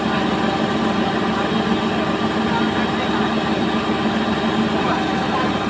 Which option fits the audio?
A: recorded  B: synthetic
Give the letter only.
A